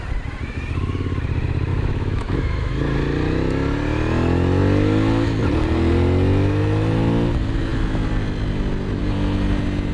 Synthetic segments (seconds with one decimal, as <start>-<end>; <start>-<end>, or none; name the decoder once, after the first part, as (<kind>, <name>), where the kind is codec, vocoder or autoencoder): 1.7-2.7 (autoencoder, DAC-VAE)